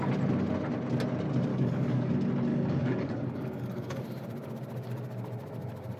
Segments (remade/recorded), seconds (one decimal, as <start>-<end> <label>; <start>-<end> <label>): 0.0-1.5 recorded; 1.5-2.1 remade; 2.1-2.5 recorded; 2.5-4.0 remade; 4.0-6.0 recorded